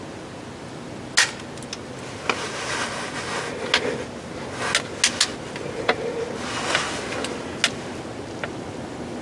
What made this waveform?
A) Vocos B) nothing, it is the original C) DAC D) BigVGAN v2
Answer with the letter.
B